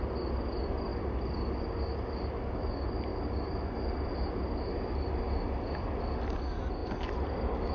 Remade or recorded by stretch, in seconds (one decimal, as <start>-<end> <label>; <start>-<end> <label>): 0.0-7.7 recorded

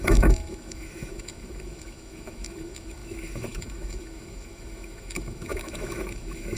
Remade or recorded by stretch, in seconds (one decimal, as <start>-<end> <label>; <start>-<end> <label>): 0.0-6.6 remade

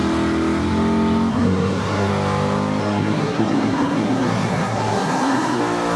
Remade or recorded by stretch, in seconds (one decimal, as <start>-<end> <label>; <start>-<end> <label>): 0.0-1.3 recorded; 1.3-2.1 remade; 2.1-2.8 recorded; 2.8-5.6 remade; 5.6-6.0 recorded

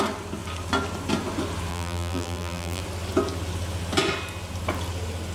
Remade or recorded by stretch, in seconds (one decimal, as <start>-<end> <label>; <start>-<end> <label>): 0.0-1.7 recorded; 1.7-2.8 remade; 2.8-5.3 recorded

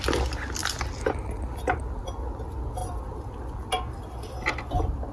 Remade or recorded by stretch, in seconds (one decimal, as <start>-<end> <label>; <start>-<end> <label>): 0.0-5.1 recorded